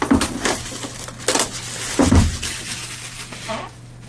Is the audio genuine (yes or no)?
yes